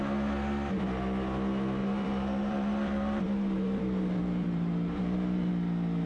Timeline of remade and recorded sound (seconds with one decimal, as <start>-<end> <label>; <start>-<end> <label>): 0.0-1.8 recorded; 1.8-5.5 remade; 5.5-6.1 recorded